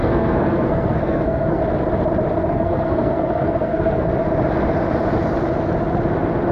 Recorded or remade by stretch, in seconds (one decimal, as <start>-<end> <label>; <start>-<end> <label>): 0.0-1.6 remade; 1.6-2.5 recorded; 2.5-4.1 remade; 4.1-6.5 recorded